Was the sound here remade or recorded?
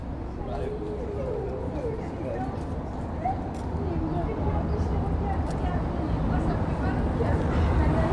recorded